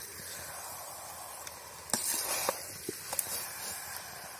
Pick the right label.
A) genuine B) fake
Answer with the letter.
A